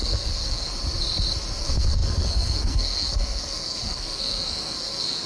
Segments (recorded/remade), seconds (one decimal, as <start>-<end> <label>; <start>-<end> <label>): 0.0-0.7 remade; 0.7-1.6 recorded; 1.6-5.3 remade